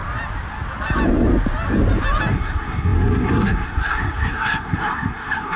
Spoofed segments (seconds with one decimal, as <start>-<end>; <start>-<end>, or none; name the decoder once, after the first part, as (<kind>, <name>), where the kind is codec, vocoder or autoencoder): 2.3-5.6 (codec, SNAC)